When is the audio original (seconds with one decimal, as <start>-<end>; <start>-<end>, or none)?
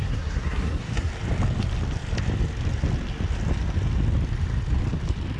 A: 1.1-5.4